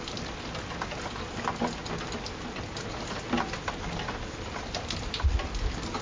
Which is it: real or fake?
real